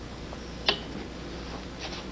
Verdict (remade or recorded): recorded